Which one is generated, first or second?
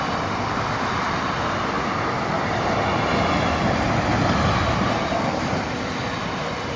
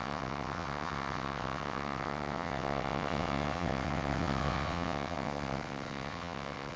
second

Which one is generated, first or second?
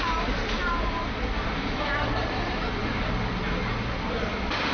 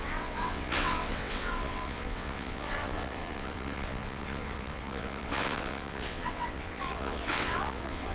second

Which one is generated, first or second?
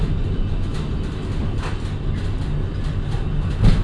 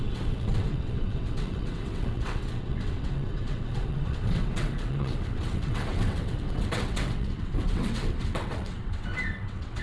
second